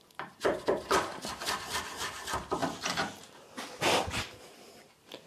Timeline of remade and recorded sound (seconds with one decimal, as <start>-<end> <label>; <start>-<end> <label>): 0.0-5.3 remade